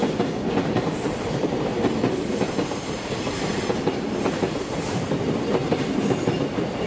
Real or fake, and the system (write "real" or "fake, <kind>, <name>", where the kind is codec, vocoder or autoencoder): real